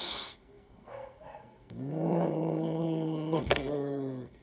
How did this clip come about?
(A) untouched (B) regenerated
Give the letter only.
B